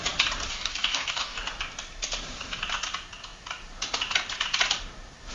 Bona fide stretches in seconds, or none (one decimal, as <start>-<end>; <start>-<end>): 0.0-0.5; 1.4-5.3